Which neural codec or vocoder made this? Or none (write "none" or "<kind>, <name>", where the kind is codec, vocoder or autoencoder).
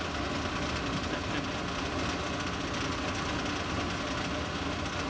none